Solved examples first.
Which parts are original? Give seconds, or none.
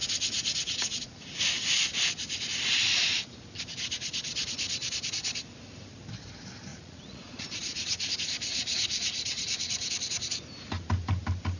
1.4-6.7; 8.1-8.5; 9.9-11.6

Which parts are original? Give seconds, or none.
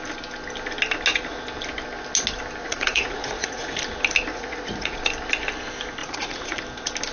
0.0-2.6; 3.8-4.3; 5.0-6.0; 6.6-7.1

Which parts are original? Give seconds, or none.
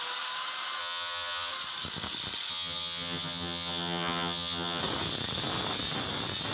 0.0-0.8; 1.5-2.5; 4.8-6.5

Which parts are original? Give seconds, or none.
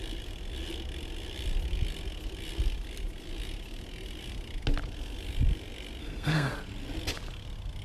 0.0-6.0; 6.5-7.8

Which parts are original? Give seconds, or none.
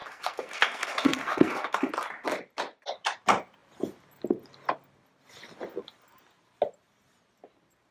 1.9-7.9